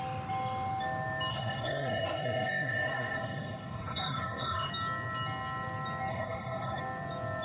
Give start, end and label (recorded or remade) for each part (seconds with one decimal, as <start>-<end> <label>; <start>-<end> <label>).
0.0-1.3 recorded; 1.3-4.7 remade; 4.7-6.1 recorded; 6.1-6.8 remade; 6.8-7.4 recorded